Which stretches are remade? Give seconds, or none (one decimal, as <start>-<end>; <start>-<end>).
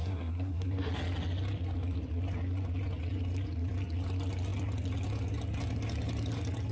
0.0-0.9